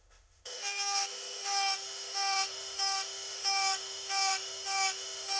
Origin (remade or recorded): remade